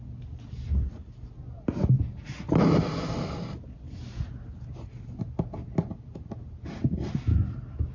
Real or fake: real